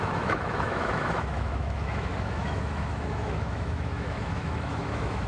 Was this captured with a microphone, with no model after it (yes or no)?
no